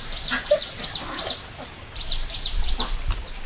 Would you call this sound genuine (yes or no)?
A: yes